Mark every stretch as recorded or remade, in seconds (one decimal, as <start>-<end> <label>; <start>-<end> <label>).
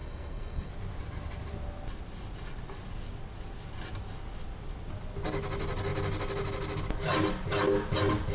0.0-0.7 remade; 0.7-8.3 recorded